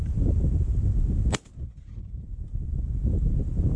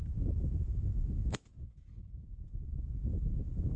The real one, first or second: first